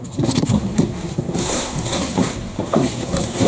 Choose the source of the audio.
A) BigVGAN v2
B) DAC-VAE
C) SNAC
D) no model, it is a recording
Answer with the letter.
C